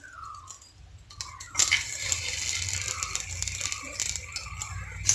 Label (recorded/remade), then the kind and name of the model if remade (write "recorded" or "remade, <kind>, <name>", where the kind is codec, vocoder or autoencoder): recorded